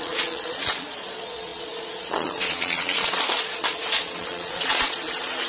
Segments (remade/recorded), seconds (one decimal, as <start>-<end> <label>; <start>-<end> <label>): 0.0-5.5 remade